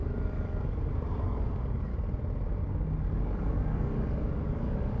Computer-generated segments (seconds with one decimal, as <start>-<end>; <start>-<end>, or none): 0.0-1.9; 3.0-5.0